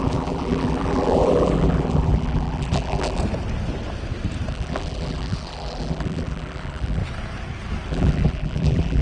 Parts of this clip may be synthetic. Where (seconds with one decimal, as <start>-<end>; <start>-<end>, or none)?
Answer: 0.0-3.2; 4.5-7.0; 7.9-9.0